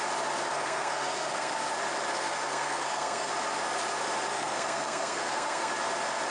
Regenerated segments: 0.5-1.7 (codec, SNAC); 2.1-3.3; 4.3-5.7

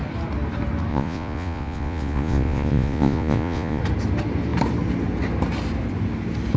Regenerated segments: 0.9-3.8 (vocoder, Vocos)

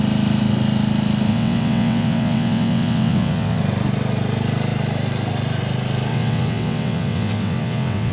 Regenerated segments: 1.3-3.6 (vocoder, WaveNeXt); 6.1-8.1

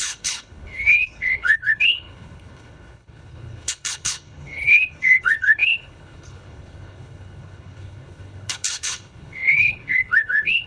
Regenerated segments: 0.0-10.7 (codec, HILCodec)

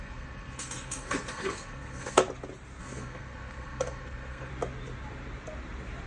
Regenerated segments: 0.0-2.2 (codec, SNAC); 2.8-4.5

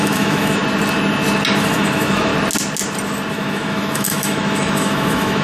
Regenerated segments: 0.0-0.6 (autoencoder, DAC-VAE); 1.6-2.3; 3.3-5.4